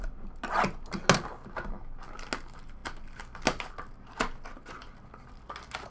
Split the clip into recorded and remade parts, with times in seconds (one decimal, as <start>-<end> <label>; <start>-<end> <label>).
0.0-5.9 recorded

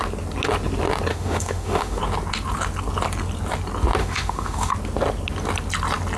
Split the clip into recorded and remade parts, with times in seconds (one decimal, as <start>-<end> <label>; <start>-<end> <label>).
0.0-1.1 recorded; 1.1-2.0 remade; 2.0-4.0 recorded; 4.0-4.7 remade; 4.7-6.2 recorded

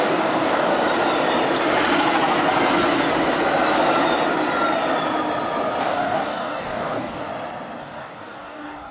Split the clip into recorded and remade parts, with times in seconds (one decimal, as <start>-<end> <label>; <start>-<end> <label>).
0.0-0.7 remade; 0.7-5.8 recorded; 5.8-7.3 remade; 7.3-7.8 recorded; 7.8-8.9 remade

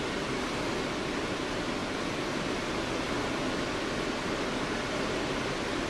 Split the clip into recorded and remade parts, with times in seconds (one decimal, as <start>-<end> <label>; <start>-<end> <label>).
0.0-5.9 recorded

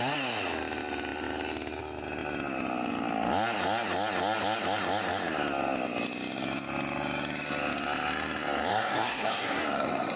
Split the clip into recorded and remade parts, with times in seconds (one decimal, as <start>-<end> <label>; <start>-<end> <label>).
0.0-8.7 recorded; 8.7-10.2 remade

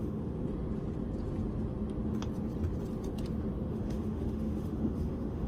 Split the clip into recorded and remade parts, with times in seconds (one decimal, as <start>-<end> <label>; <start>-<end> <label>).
0.0-0.4 remade; 0.4-3.7 recorded; 3.7-5.5 remade

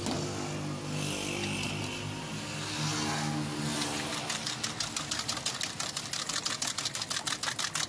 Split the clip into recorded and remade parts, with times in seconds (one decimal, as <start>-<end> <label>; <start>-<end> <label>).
0.0-7.9 recorded

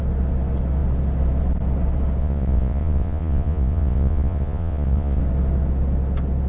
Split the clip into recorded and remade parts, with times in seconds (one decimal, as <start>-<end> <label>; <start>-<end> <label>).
0.0-2.2 recorded; 2.2-5.2 remade; 5.2-6.5 recorded